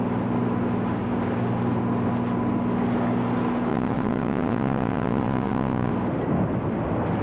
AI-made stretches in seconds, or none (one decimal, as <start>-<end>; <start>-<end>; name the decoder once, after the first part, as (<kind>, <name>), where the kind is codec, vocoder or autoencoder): 3.7-5.9 (vocoder, Vocos)

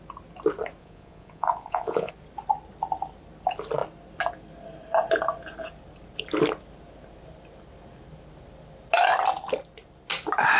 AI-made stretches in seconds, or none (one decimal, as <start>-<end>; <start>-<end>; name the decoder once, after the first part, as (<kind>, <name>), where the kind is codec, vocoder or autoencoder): 0.8-2.1 (vocoder, Vocos)